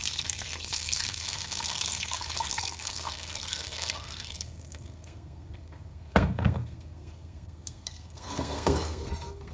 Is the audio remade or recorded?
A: remade